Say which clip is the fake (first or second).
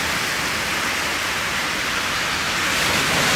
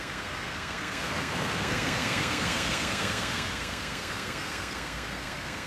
second